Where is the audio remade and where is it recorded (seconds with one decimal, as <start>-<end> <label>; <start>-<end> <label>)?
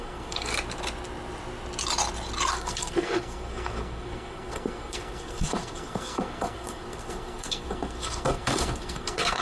0.0-0.5 remade; 0.5-2.5 recorded; 2.5-9.4 remade